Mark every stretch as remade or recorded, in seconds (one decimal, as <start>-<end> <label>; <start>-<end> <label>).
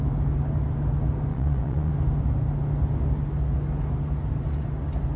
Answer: 0.0-1.3 recorded; 1.3-1.9 remade; 1.9-5.2 recorded